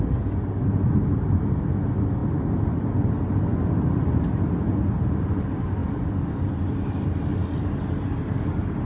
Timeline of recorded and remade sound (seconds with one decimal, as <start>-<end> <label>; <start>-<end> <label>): 0.0-8.8 recorded

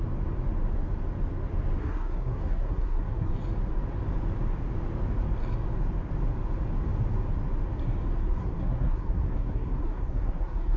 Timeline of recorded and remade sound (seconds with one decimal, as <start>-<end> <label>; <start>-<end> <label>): 0.0-1.8 recorded; 1.8-3.3 remade; 3.3-8.2 recorded; 8.2-10.8 remade

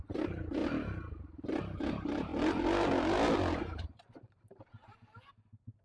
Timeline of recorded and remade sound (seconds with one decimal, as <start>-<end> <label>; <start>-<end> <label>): 0.0-0.6 remade; 0.6-1.9 recorded; 1.9-2.3 remade; 2.3-3.6 recorded; 3.6-5.8 remade

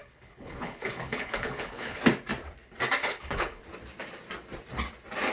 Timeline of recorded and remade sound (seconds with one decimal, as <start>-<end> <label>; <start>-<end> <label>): 0.0-2.0 remade; 2.0-3.0 recorded; 3.0-3.6 remade; 3.6-5.3 recorded